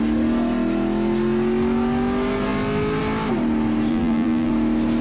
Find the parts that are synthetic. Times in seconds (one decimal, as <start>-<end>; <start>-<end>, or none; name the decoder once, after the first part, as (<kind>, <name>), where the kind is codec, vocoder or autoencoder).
3.9-4.5 (vocoder, BigVGAN v2)